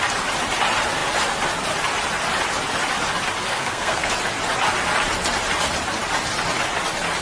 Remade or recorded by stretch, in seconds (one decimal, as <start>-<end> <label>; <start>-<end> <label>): 0.0-3.5 recorded; 3.5-4.1 remade; 4.1-7.2 recorded

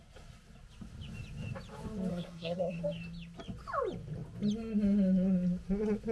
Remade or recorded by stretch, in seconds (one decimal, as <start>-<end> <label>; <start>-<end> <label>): 0.0-2.1 recorded; 2.1-2.8 remade; 2.8-6.1 recorded

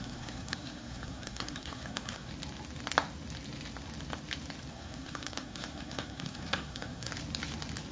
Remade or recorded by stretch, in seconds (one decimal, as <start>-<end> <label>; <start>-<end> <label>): 0.0-2.3 remade; 2.3-4.7 recorded; 4.7-7.1 remade; 7.1-7.9 recorded

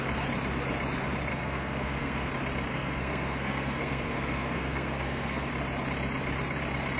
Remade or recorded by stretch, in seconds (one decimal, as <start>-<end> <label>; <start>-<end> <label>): 0.0-1.3 recorded; 1.3-2.3 remade; 2.3-2.7 recorded; 2.7-5.5 remade; 5.5-7.0 recorded

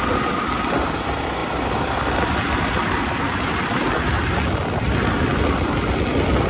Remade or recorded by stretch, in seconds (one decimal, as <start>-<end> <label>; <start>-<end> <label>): 0.0-6.5 recorded

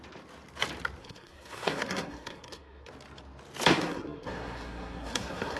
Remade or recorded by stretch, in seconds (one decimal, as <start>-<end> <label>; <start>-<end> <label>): 0.0-1.0 recorded; 1.0-2.9 remade; 2.9-3.7 recorded; 3.7-5.6 remade

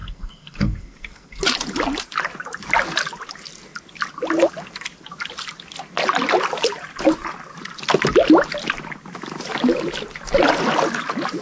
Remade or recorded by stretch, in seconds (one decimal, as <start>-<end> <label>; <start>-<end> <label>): 0.0-1.4 remade; 1.4-11.4 recorded